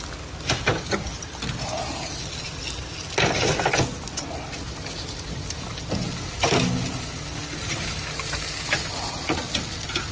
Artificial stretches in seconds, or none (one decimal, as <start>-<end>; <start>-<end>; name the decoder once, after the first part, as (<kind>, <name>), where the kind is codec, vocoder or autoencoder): none